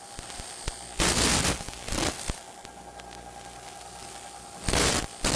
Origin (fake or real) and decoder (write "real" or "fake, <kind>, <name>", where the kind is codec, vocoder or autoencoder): real